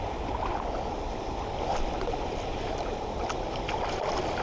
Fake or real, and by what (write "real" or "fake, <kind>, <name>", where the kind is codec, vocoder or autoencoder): fake, vocoder, BigVGAN v2